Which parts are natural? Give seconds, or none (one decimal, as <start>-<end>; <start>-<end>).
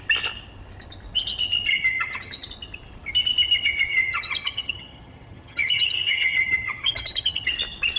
0.0-1.7; 2.5-3.9; 7.5-8.0